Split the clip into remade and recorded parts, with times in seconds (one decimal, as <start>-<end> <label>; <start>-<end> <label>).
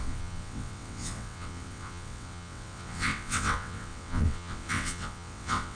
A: 0.0-5.8 remade